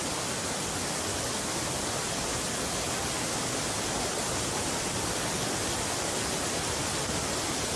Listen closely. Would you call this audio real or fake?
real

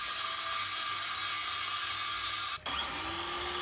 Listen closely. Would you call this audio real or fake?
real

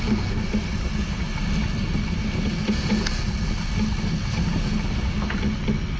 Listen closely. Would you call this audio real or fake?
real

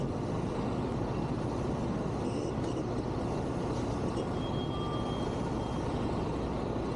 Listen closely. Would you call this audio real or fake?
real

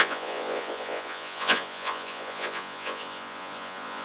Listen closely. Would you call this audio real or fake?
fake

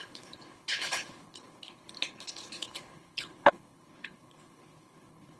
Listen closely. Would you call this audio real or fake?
fake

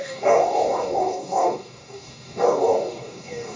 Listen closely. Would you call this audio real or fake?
fake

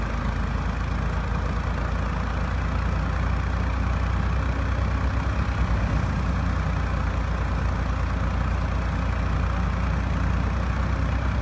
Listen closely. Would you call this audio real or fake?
real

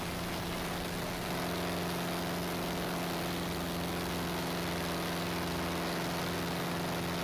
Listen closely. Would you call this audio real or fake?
real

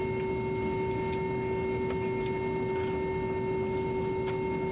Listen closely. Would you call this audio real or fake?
real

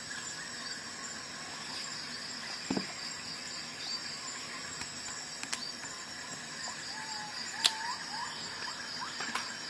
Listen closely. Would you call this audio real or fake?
real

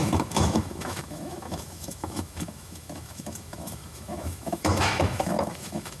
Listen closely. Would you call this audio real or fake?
fake